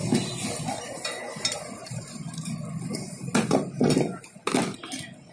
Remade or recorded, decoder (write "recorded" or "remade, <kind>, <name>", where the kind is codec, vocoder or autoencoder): recorded